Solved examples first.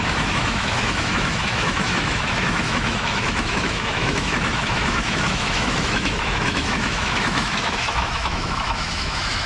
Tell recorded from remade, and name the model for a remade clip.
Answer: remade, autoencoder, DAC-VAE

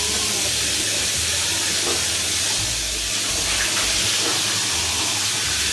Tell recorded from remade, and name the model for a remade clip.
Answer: recorded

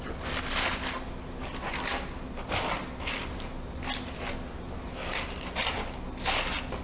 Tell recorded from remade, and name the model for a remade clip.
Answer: recorded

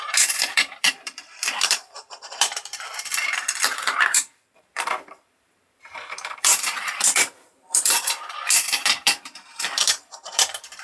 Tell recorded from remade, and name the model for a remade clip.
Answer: remade, vocoder, BigVGAN v2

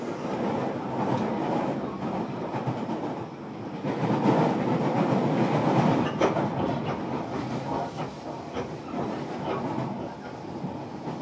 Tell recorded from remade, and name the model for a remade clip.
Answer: recorded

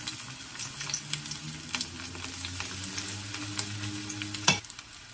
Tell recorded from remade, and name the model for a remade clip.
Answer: recorded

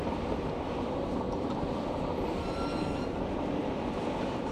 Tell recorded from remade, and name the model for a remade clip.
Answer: remade, vocoder, BigVGAN v2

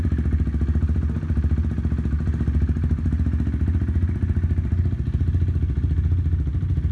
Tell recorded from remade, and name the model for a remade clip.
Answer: recorded